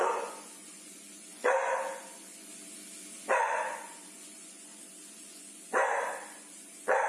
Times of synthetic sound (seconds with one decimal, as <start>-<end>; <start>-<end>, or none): 0.0-2.5; 3.3-7.1